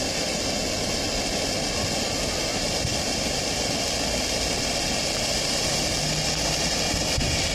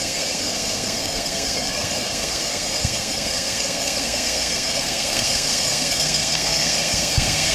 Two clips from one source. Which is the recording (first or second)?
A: first